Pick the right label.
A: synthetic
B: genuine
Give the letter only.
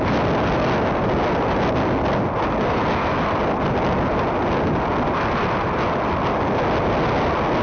B